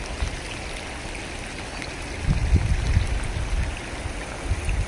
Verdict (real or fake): real